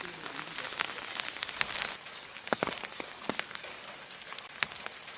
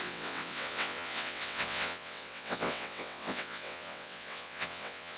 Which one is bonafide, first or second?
first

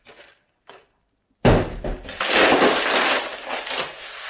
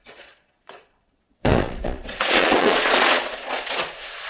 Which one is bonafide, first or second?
first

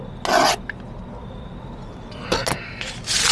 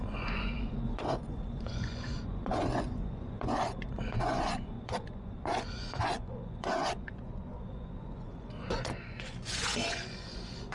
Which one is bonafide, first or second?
first